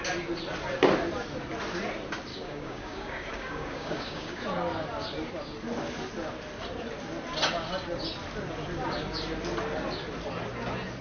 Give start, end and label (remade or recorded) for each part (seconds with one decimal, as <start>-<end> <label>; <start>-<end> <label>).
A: 0.0-2.3 recorded; 2.3-4.4 remade; 4.4-11.0 recorded